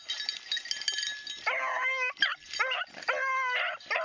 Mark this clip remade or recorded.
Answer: recorded